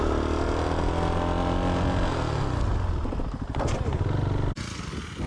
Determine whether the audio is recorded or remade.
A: recorded